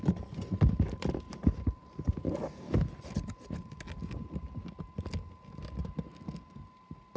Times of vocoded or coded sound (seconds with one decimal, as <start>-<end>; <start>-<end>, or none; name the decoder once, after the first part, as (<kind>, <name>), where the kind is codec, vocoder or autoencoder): none